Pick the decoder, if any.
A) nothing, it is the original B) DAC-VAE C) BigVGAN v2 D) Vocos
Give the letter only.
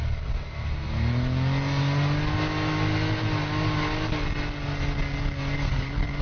A